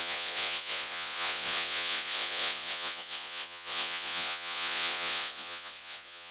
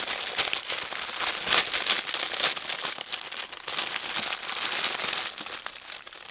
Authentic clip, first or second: second